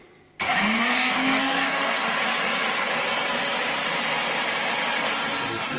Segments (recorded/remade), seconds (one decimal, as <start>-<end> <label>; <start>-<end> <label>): 0.0-0.6 recorded; 0.6-2.0 remade; 2.0-5.8 recorded